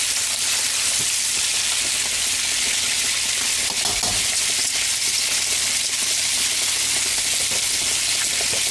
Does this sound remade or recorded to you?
recorded